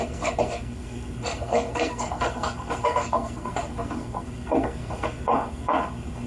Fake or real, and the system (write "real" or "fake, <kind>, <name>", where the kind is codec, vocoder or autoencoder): fake, codec, SNAC